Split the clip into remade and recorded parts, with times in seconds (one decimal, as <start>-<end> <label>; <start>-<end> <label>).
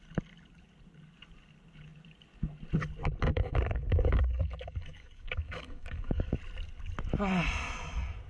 0.0-3.3 recorded; 3.3-6.4 remade; 6.4-8.3 recorded